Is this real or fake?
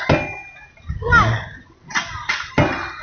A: real